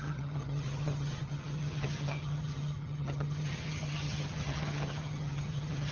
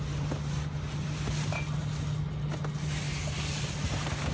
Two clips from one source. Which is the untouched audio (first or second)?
second